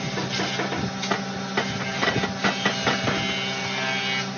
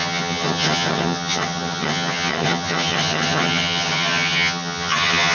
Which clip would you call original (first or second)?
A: first